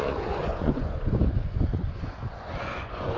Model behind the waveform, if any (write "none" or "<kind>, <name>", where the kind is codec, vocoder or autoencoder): vocoder, Vocos